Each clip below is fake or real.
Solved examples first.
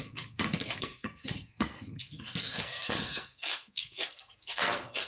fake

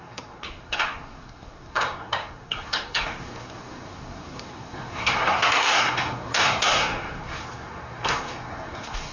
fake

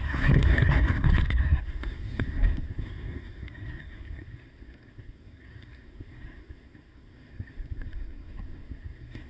fake